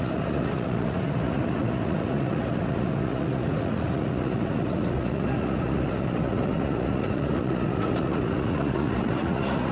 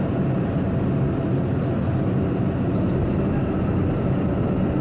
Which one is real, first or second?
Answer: second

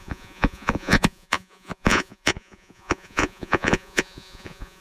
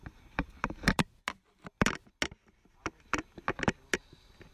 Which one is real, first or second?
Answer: second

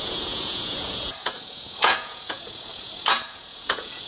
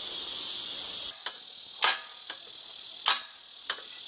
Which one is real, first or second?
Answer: second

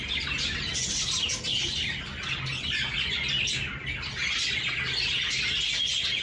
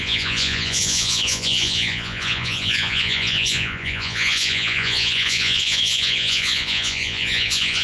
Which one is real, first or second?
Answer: first